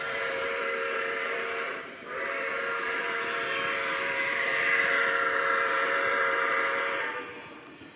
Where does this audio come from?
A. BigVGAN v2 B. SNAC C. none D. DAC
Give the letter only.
A